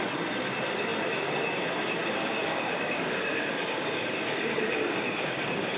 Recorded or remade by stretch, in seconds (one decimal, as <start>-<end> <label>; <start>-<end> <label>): 0.0-2.0 recorded; 2.0-5.8 remade